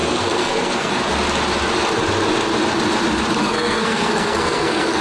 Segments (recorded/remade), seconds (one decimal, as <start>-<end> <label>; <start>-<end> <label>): 0.0-0.9 remade; 0.9-3.4 recorded; 3.4-5.0 remade